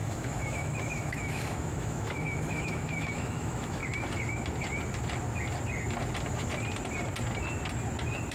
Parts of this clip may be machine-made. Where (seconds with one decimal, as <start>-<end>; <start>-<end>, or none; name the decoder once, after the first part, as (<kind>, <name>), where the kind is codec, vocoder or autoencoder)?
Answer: 0.0-3.8 (autoencoder, DAC-VAE)